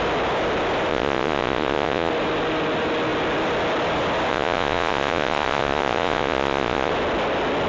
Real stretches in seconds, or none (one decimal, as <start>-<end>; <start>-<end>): 0.0-0.9; 2.1-4.3; 6.9-7.7